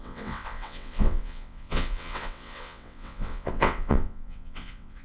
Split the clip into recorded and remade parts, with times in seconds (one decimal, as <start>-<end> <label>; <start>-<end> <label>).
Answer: 0.0-5.0 remade